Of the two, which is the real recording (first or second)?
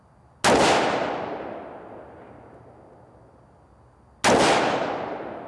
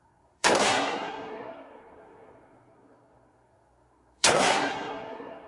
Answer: first